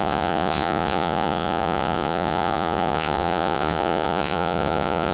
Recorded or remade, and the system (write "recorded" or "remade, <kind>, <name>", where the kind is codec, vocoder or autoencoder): remade, vocoder, Vocos